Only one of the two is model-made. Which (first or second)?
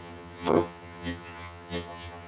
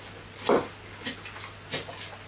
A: first